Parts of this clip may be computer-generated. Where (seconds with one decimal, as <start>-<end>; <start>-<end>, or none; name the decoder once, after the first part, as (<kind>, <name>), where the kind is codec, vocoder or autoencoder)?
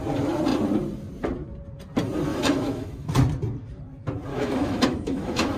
2.3-3.1 (autoencoder, DAC-VAE); 4.3-5.6